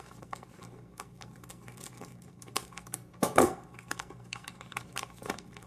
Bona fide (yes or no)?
no